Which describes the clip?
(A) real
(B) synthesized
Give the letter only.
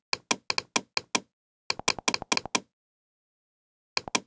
A